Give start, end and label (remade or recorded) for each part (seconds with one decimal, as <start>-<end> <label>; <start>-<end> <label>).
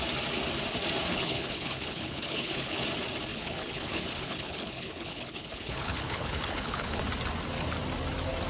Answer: 0.0-1.1 recorded; 1.1-2.8 remade; 2.8-3.3 recorded; 3.3-7.0 remade; 7.0-8.5 recorded